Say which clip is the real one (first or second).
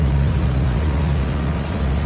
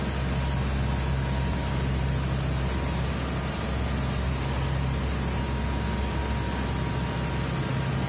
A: second